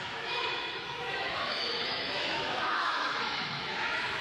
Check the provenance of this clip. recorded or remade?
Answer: remade